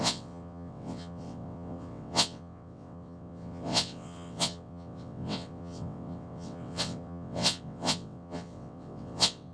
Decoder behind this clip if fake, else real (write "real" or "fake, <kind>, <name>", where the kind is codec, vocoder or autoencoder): fake, vocoder, WaveNeXt